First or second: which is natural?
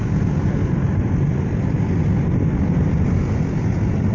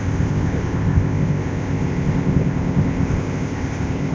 first